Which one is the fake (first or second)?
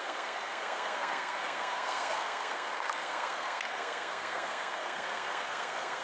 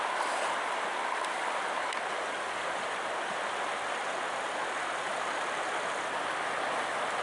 first